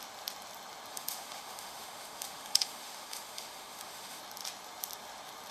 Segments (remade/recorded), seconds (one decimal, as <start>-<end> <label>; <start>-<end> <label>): 0.0-0.9 recorded; 0.9-4.2 remade; 4.2-5.5 recorded